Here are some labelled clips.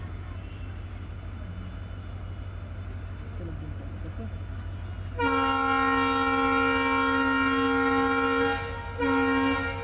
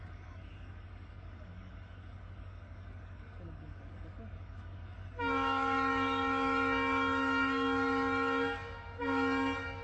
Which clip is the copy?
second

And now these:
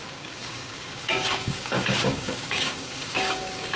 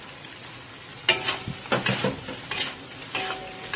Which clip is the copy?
first